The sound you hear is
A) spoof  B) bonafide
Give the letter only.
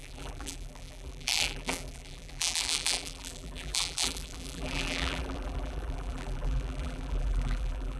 A